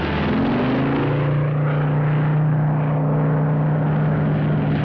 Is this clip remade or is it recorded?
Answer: recorded